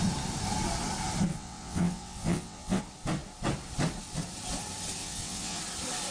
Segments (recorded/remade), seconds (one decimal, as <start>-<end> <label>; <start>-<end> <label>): 0.0-1.3 recorded; 1.3-2.8 remade; 2.8-5.0 recorded; 5.0-5.6 remade; 5.6-6.1 recorded